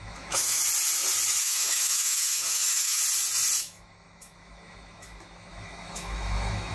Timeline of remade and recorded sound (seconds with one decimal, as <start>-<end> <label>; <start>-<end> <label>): 0.0-0.6 remade; 0.6-1.4 recorded; 1.4-3.0 remade; 3.0-3.6 recorded; 3.6-6.7 remade